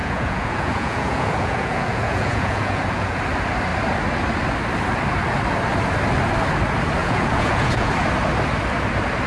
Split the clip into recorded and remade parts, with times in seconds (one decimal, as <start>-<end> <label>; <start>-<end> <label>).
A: 0.0-3.2 remade; 3.2-7.0 recorded; 7.0-7.9 remade; 7.9-9.3 recorded